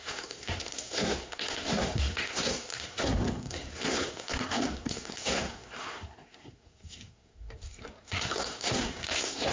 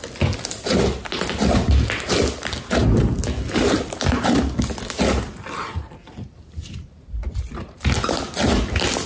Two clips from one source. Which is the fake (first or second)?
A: first